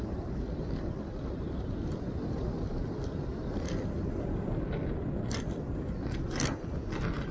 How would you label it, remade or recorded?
remade